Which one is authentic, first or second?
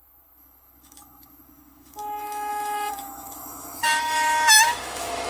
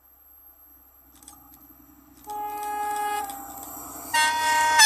second